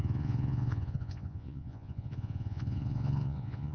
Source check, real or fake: fake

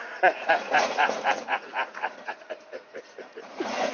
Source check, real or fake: fake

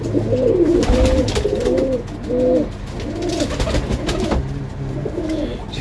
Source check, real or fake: real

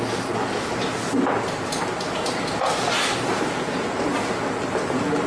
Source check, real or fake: real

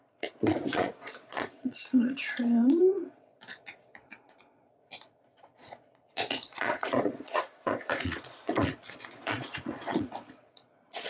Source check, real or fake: fake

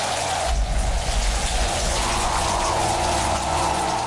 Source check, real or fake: fake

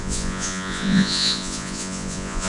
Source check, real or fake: fake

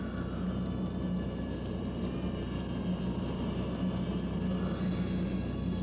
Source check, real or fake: real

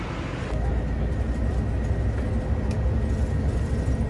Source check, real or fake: real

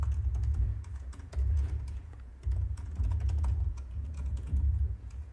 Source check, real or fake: fake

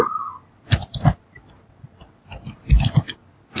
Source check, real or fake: real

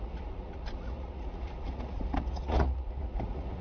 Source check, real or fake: fake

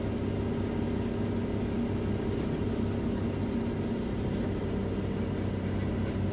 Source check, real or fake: real